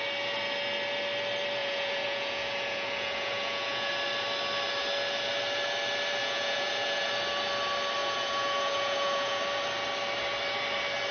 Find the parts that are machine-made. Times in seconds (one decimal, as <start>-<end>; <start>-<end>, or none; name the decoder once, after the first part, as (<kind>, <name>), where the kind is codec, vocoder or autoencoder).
1.6-3.9 (vocoder, Vocos); 6.2-7.1; 8.0-9.4